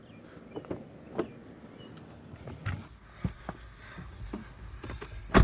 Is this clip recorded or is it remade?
recorded